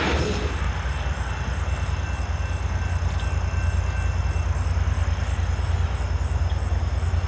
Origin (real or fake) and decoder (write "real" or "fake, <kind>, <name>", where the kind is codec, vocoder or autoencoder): real